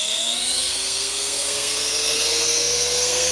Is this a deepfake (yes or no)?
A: yes